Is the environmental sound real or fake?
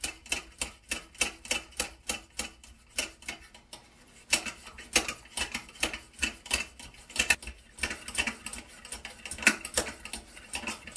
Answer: real